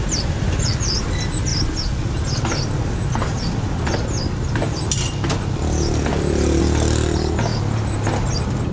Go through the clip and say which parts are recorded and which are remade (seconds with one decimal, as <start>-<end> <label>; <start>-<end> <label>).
0.0-8.7 recorded